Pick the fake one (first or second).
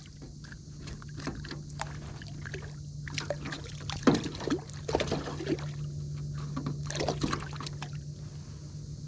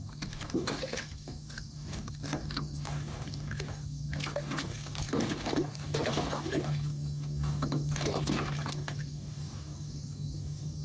second